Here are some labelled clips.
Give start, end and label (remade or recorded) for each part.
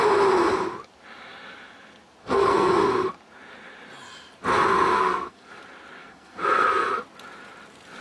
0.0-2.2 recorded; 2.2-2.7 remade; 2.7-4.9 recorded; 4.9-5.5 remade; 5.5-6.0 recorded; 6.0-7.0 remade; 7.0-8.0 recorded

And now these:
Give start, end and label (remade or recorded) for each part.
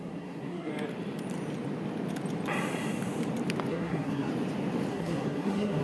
0.0-0.7 remade; 0.7-3.7 recorded; 3.7-4.3 remade; 4.3-4.9 recorded; 4.9-5.8 remade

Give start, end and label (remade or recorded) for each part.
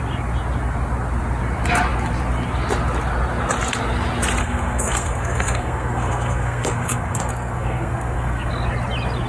0.0-4.4 recorded; 4.4-8.5 remade; 8.5-9.3 recorded